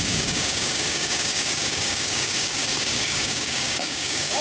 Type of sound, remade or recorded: remade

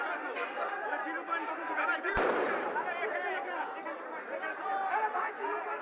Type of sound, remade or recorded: recorded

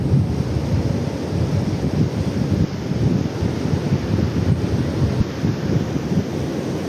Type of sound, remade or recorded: recorded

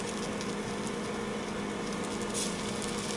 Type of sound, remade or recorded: recorded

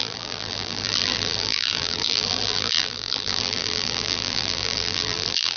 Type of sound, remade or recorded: remade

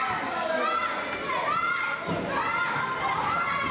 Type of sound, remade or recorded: recorded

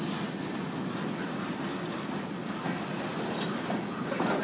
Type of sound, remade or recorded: recorded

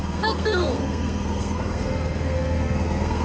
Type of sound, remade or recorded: remade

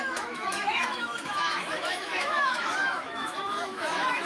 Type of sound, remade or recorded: remade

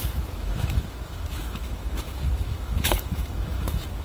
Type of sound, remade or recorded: remade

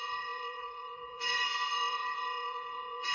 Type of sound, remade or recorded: remade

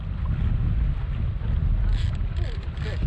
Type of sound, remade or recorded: recorded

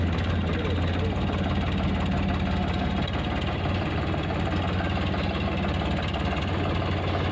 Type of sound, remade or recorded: recorded